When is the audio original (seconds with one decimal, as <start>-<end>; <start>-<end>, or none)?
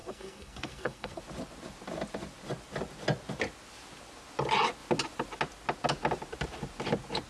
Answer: 1.2-7.3